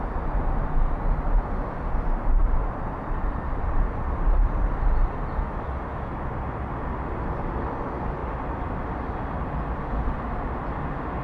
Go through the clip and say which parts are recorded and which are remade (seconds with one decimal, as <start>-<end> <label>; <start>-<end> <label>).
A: 0.0-2.4 recorded; 2.4-4.5 remade; 4.5-8.2 recorded; 8.2-10.2 remade; 10.2-11.2 recorded

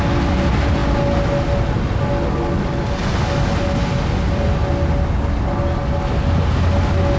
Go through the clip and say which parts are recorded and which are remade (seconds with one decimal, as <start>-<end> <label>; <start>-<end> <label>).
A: 0.0-7.2 recorded

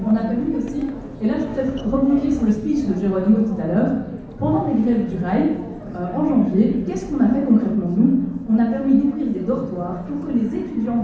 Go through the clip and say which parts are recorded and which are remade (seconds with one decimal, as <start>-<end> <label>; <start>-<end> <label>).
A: 0.0-1.5 recorded; 1.5-2.5 remade; 2.5-4.4 recorded; 4.4-4.9 remade; 4.9-11.0 recorded

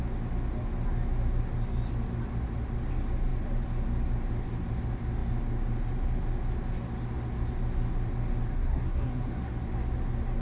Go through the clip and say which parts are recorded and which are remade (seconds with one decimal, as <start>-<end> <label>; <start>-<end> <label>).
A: 0.0-8.5 recorded; 8.5-9.5 remade; 9.5-10.4 recorded

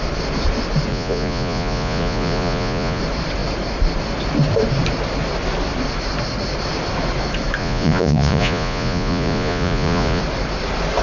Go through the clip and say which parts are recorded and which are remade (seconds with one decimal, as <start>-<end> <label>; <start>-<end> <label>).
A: 0.0-0.9 recorded; 0.9-3.0 remade; 3.0-7.6 recorded; 7.6-10.2 remade; 10.2-11.0 recorded